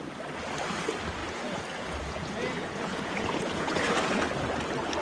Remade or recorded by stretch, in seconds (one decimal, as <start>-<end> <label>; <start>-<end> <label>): 0.0-1.2 recorded; 1.2-4.2 remade; 4.2-5.0 recorded